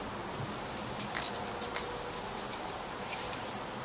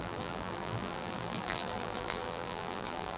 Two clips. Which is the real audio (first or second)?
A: first